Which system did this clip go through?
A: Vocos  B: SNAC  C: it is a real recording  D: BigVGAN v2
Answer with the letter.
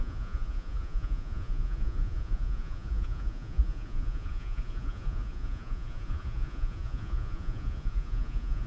A